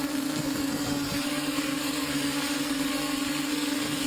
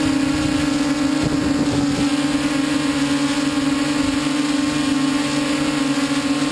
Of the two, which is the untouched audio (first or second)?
second